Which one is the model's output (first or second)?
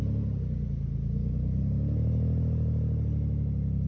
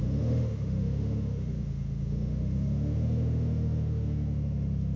second